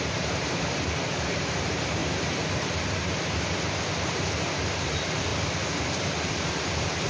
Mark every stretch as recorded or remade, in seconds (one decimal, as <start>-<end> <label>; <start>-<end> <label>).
0.0-5.3 remade; 5.3-5.8 recorded; 5.8-7.1 remade